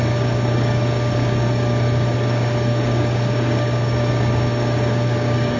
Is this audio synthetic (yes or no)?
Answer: yes